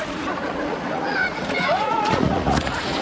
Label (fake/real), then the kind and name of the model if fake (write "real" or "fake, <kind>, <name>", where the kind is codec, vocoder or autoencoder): fake, vocoder, Vocos